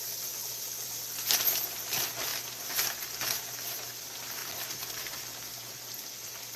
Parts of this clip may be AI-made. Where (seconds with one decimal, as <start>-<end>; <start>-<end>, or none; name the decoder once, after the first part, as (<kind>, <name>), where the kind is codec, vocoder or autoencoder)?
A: none